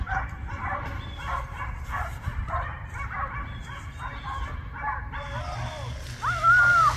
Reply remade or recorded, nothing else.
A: recorded